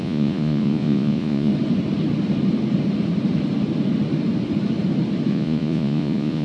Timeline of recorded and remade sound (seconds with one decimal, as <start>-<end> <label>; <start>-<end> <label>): 0.0-1.5 remade; 1.5-5.3 recorded; 5.3-6.4 remade